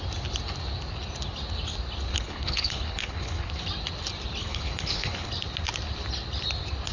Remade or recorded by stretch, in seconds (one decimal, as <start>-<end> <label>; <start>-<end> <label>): 0.0-2.1 recorded; 2.1-3.5 remade; 3.5-4.5 recorded; 4.5-5.3 remade; 5.3-6.9 recorded